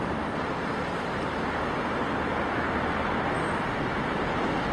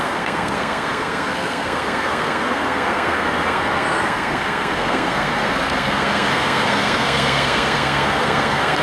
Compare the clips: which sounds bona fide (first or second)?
first